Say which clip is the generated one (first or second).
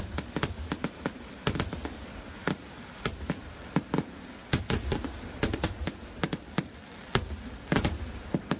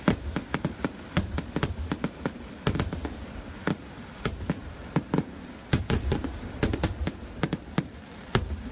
second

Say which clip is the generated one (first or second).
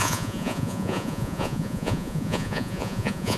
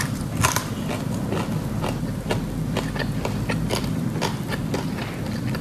first